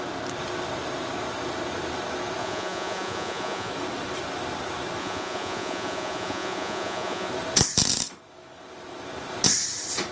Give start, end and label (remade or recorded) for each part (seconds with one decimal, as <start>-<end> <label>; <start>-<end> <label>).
0.0-2.4 recorded; 2.4-3.7 remade; 3.7-5.0 recorded; 5.0-7.3 remade; 7.3-10.1 recorded